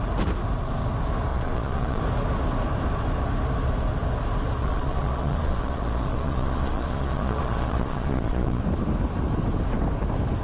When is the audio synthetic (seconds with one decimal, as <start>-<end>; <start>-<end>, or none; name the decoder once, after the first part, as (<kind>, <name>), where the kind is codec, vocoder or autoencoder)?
1.3-2.0 (vocoder, Vocos); 4.6-8.6